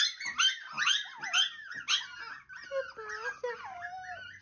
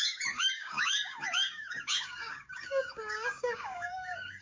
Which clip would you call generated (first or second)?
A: second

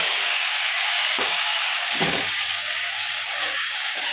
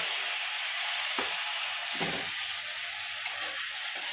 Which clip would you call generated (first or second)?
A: first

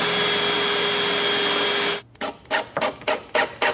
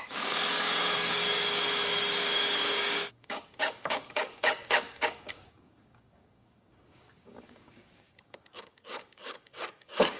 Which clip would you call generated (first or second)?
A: second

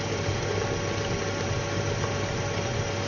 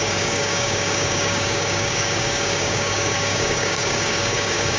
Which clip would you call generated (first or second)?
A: second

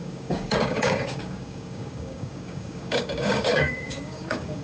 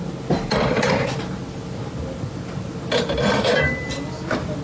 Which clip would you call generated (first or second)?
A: first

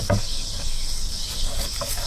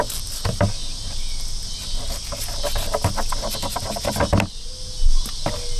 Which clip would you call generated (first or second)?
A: first